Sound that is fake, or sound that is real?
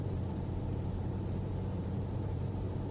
fake